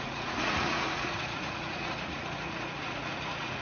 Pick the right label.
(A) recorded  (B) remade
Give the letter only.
B